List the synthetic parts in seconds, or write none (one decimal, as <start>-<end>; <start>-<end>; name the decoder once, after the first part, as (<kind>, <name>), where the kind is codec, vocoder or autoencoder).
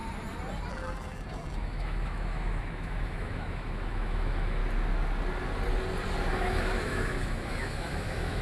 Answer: 0.7-4.6 (autoencoder, DAC-VAE); 6.3-8.4